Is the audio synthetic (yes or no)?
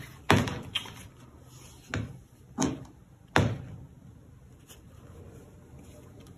no